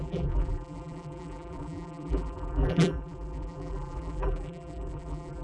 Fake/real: fake